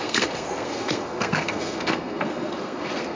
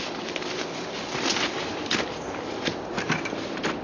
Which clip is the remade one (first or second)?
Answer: first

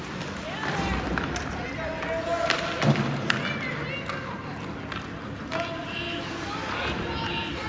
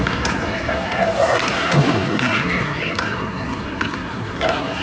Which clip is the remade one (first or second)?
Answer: second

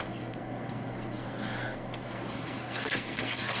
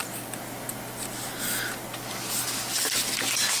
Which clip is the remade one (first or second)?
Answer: first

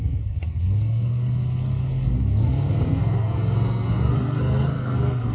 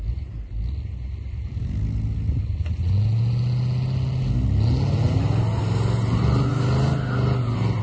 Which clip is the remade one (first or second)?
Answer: first